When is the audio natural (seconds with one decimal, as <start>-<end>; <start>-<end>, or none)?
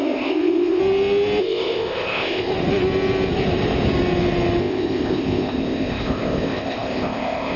0.8-1.4; 2.5-4.6